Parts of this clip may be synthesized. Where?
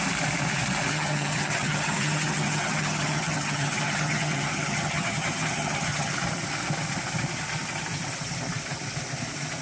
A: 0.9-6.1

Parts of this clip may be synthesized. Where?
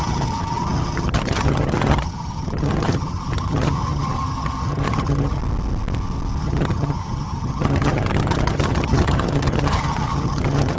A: 0.0-5.4; 6.4-10.8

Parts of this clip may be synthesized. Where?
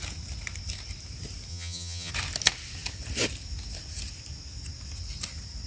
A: 1.5-2.1